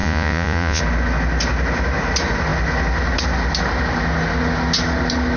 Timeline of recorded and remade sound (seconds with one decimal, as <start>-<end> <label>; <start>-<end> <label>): 0.0-0.8 remade; 0.8-5.4 recorded